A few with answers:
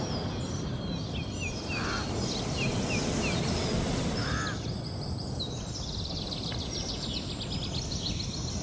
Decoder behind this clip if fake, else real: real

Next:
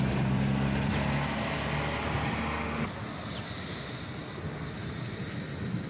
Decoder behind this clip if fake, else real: real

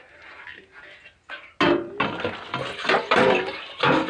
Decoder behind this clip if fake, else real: real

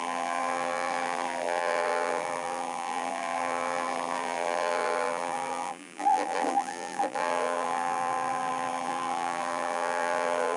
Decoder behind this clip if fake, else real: fake, vocoder, BigVGAN v2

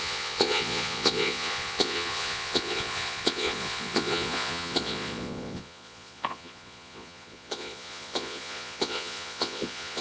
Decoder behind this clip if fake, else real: fake, vocoder, Vocos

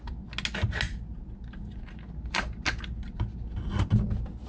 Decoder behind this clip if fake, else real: real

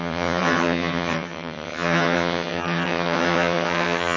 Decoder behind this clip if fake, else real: fake, vocoder, HiFi-GAN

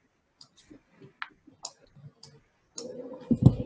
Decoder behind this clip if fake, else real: real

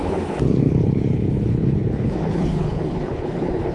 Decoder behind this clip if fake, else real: fake, codec, HILCodec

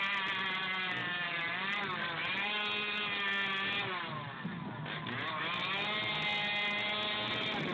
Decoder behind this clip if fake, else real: real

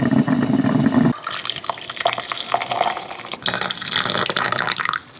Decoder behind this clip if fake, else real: real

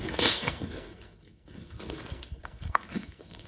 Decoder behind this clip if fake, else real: fake, codec, SNAC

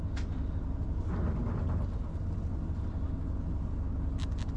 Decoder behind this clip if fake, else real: real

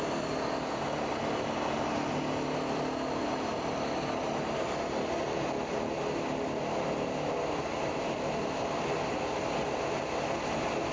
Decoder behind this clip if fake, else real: real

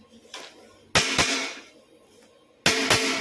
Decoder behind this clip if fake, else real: real